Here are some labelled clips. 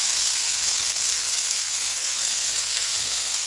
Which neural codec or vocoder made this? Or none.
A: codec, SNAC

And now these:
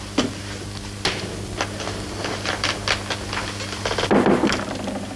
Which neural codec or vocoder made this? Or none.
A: none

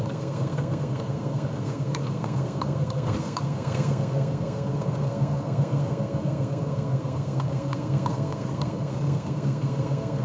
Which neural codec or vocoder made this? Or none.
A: codec, SNAC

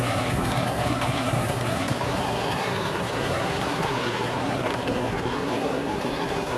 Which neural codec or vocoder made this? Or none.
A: codec, SNAC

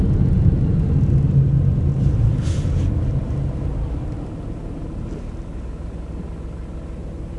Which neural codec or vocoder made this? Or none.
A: none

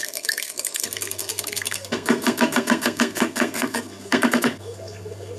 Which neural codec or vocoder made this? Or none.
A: codec, SNAC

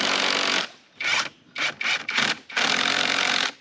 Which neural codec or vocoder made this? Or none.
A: none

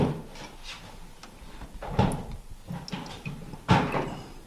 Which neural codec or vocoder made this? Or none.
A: none